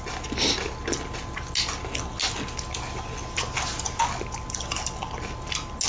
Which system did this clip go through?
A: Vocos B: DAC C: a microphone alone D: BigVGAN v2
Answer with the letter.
C